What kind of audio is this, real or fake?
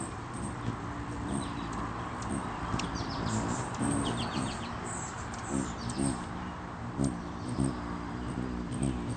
fake